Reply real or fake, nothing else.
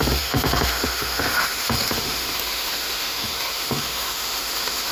fake